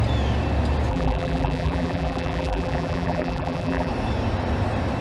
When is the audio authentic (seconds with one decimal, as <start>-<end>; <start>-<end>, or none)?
0.0-0.9; 3.9-5.0